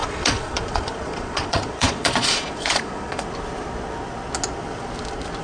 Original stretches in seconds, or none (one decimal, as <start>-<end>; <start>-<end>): 3.2-5.4